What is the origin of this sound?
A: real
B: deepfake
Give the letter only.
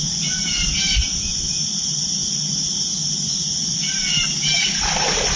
A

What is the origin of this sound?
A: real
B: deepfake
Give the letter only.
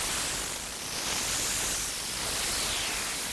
A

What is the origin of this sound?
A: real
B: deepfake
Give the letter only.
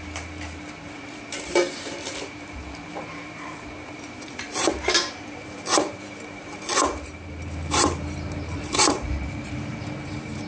B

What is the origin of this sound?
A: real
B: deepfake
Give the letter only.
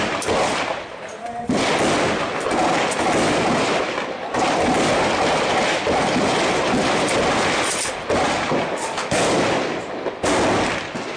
A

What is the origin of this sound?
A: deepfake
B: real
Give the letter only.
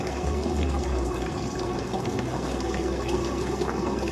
A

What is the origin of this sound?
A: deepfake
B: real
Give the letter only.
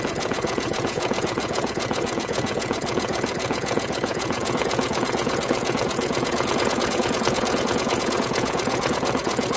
A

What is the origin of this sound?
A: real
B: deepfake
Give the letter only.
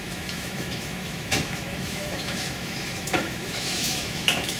B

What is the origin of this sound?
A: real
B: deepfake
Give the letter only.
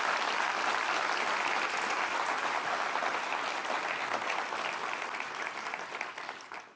A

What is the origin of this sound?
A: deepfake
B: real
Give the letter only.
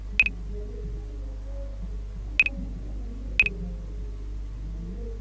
B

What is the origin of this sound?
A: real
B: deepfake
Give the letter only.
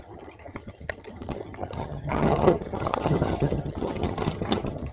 B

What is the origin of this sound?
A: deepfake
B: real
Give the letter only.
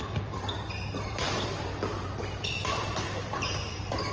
A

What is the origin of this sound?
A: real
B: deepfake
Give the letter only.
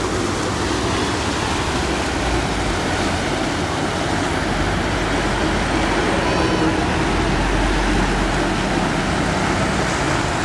A